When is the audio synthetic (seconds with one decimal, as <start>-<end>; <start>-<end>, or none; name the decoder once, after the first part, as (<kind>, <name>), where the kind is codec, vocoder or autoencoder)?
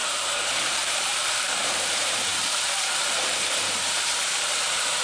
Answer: 0.0-5.0 (vocoder, BigVGAN v2)